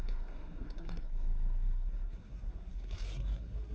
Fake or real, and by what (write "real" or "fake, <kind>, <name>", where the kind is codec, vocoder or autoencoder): fake, codec, SNAC